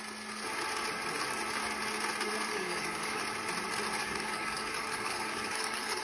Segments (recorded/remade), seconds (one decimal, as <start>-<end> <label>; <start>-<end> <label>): 0.0-2.5 recorded; 2.5-3.2 remade; 3.2-4.0 recorded; 4.0-6.0 remade